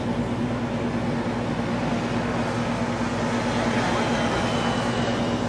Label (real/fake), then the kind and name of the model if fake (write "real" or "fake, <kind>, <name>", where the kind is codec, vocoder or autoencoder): real